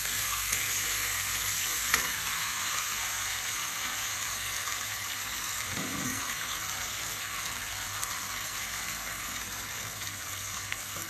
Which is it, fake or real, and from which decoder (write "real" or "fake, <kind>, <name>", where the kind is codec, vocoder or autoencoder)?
fake, codec, SNAC